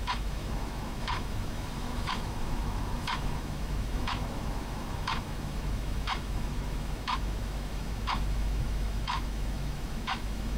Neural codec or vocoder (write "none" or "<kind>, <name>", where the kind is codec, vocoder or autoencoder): autoencoder, DAC-VAE